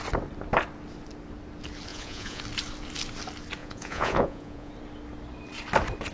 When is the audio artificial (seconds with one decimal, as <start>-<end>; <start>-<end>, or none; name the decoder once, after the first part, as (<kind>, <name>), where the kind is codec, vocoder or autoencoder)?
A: 1.9-2.4 (vocoder, Vocos); 3.6-4.7